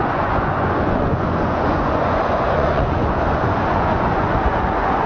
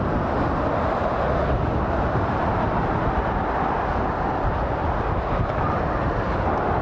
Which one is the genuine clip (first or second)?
second